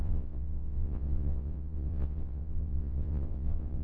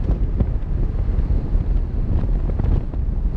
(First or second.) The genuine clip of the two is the second